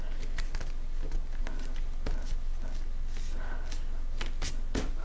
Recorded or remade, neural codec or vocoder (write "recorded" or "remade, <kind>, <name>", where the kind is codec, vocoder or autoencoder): recorded